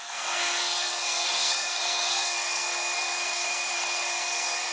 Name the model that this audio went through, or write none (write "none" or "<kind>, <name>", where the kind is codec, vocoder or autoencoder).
codec, SNAC